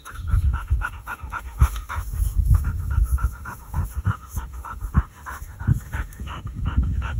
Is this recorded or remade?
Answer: remade